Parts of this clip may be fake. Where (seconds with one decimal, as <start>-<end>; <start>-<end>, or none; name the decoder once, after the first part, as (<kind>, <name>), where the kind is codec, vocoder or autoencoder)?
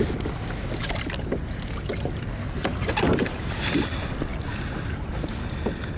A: 2.7-3.5 (vocoder, BigVGAN v2); 4.3-5.1